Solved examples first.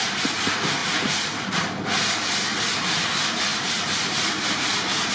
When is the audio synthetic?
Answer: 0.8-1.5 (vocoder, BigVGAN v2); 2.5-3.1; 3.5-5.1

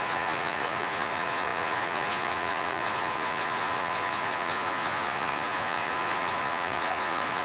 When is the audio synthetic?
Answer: 0.0-7.4 (vocoder, Vocos)

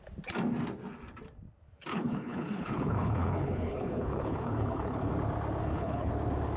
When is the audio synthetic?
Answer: 1.9-5.1 (codec, HILCodec); 5.6-6.1

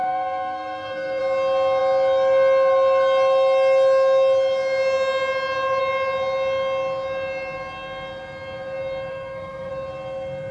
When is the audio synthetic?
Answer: 0.0-1.2 (codec, SNAC); 9.1-9.7